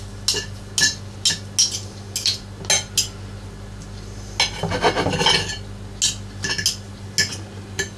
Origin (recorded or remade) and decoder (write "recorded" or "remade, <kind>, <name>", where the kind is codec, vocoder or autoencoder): recorded